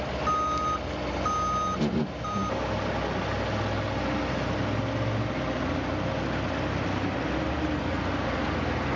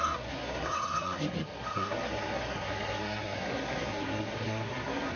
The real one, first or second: first